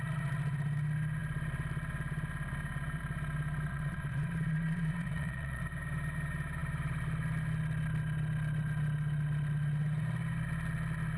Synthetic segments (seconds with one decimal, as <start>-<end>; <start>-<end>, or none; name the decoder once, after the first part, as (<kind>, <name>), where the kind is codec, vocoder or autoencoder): 3.7-5.6 (vocoder, Vocos)